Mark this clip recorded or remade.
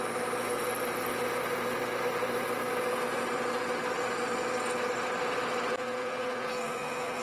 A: recorded